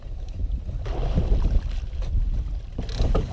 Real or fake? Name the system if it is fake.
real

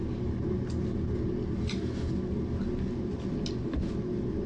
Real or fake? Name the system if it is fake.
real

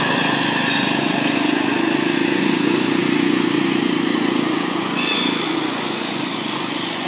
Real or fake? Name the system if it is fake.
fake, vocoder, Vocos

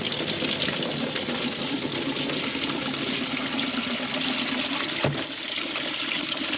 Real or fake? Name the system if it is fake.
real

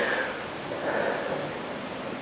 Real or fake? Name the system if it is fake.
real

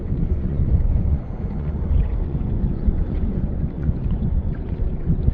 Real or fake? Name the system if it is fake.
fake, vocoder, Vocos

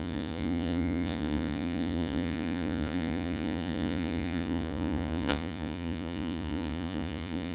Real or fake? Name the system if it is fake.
fake, vocoder, Vocos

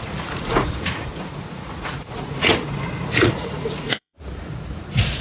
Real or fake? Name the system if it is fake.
fake, vocoder, Vocos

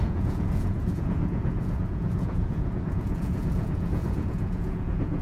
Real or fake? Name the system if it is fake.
fake, vocoder, Vocos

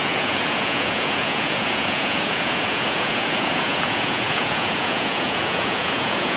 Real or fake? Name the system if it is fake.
fake, vocoder, Vocos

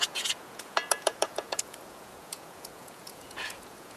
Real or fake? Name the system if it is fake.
fake, vocoder, Vocos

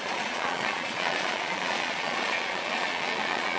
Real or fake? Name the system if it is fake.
fake, vocoder, Vocos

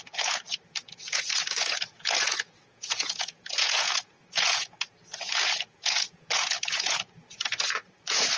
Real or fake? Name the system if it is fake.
fake, vocoder, Vocos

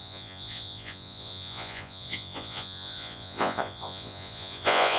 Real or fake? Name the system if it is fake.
fake, vocoder, Vocos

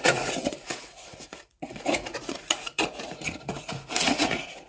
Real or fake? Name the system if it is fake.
fake, vocoder, Vocos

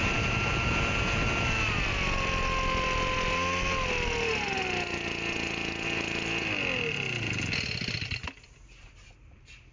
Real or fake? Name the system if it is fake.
real